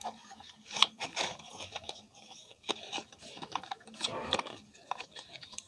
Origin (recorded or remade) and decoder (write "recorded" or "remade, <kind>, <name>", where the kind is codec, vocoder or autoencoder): remade, codec, DAC